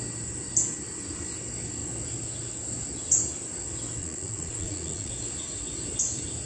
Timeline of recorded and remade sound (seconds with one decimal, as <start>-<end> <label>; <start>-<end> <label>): 0.0-4.0 recorded; 4.0-5.1 remade; 5.1-6.5 recorded